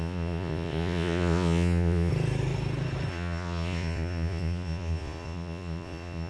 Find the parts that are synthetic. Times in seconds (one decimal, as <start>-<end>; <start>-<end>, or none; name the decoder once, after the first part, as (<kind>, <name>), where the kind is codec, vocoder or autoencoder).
0.0-2.1 (vocoder, Vocos); 3.1-6.3